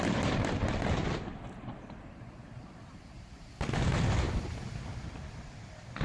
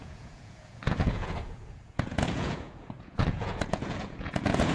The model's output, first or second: second